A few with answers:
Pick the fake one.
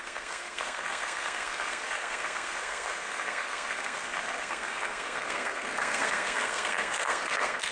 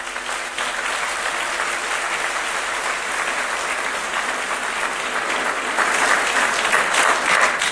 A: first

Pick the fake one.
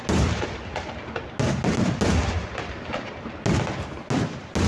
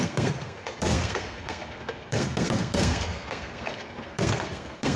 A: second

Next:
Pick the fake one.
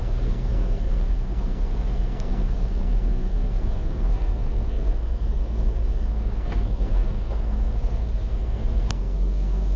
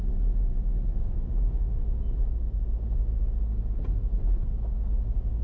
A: first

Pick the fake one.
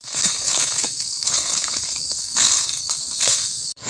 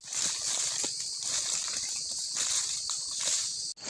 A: first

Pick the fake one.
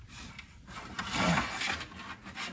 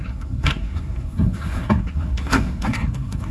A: second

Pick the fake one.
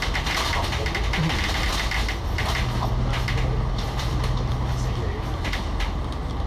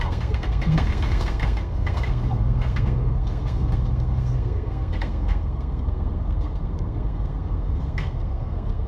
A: second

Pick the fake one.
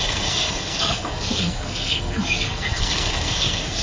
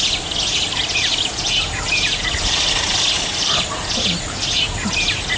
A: first